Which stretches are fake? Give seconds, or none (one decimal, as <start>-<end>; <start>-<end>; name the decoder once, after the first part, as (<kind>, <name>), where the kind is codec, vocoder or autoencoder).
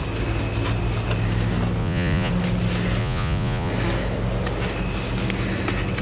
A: 1.8-2.3 (vocoder, Vocos); 3.0-3.7